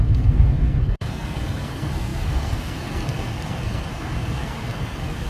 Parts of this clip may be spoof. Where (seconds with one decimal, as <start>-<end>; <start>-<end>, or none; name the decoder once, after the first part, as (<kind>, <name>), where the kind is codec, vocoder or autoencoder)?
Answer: 0.0-5.3 (codec, SNAC)